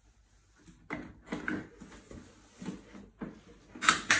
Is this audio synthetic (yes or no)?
no